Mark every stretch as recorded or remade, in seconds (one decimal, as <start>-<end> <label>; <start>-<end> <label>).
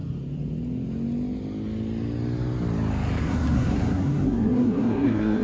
0.0-3.2 recorded; 3.2-5.4 remade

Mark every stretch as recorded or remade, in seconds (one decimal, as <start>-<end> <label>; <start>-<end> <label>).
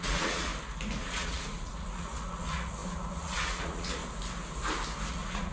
0.0-0.5 remade; 0.5-1.0 recorded; 1.0-4.0 remade; 4.0-5.1 recorded; 5.1-5.5 remade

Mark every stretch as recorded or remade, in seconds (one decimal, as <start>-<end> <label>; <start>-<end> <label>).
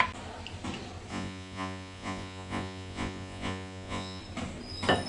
0.0-1.1 recorded; 1.1-4.2 remade; 4.2-5.1 recorded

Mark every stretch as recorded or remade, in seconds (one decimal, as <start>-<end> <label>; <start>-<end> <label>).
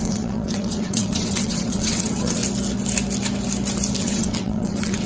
0.0-2.4 remade; 2.4-4.0 recorded; 4.0-5.1 remade